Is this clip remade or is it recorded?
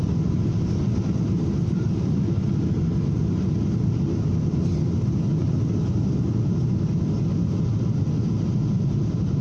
recorded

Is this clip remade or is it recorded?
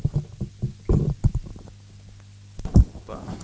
recorded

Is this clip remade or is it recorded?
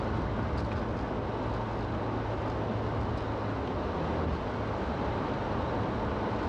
recorded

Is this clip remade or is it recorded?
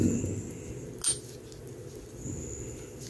recorded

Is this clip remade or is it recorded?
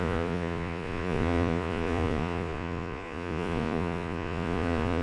remade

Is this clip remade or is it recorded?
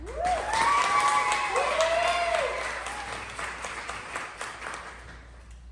recorded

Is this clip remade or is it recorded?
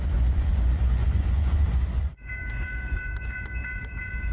remade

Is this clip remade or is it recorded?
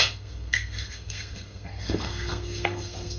remade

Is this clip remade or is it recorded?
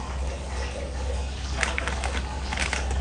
remade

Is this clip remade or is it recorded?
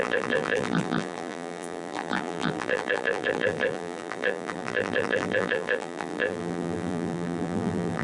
remade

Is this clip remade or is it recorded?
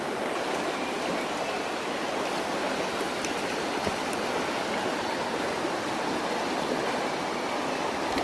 remade